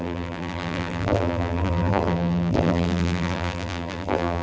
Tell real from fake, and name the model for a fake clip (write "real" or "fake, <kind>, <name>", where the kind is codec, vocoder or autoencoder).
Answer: fake, vocoder, BigVGAN v2